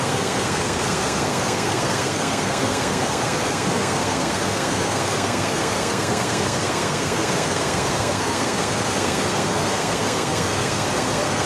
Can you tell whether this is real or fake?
fake